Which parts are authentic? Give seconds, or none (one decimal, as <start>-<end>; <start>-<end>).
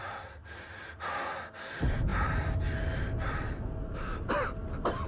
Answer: 0.0-5.1